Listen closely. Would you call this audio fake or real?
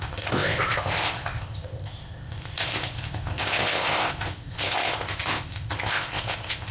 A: fake